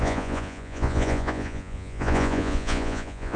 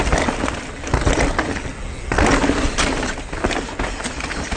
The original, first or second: second